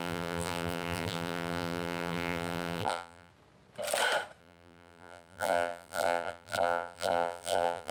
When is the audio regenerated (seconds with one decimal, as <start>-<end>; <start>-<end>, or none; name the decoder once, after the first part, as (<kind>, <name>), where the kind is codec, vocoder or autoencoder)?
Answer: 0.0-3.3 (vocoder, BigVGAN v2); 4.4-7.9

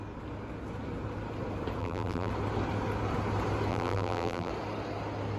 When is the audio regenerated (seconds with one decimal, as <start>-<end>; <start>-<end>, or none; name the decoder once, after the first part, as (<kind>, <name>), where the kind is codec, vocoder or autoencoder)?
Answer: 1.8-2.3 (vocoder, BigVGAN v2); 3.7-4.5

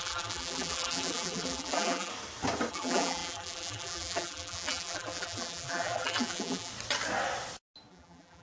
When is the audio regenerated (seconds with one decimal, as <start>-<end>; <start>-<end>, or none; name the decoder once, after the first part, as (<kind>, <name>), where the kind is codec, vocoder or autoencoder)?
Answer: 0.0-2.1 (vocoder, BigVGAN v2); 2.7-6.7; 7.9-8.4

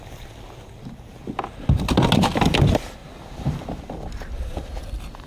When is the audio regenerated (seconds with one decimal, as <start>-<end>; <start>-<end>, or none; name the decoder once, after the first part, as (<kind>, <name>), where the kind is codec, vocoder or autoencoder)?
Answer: 3.0-4.8 (vocoder, BigVGAN v2)

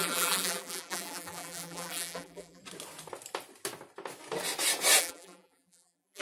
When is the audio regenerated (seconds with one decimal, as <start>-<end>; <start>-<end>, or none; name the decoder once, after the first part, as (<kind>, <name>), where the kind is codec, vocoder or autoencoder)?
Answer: 0.0-2.6 (vocoder, BigVGAN v2); 5.0-6.2

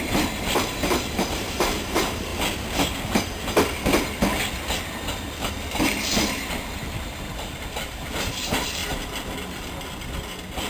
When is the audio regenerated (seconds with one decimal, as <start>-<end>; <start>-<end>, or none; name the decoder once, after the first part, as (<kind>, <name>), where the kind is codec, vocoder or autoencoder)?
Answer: 0.0-2.3 (vocoder, BigVGAN v2); 5.5-8.8

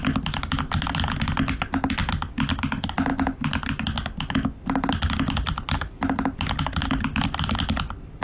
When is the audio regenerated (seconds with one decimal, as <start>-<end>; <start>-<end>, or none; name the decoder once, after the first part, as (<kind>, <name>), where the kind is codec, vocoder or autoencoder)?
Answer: none